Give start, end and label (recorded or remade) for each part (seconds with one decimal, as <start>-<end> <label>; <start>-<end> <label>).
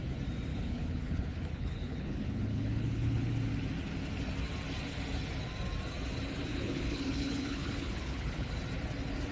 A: 0.0-0.5 recorded; 0.5-3.2 remade; 3.2-6.5 recorded; 6.5-8.5 remade; 8.5-9.3 recorded